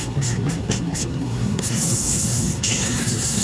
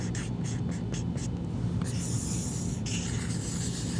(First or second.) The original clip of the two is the second